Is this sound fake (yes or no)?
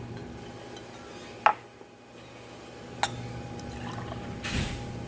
no